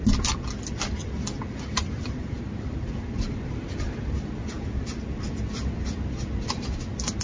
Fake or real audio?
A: real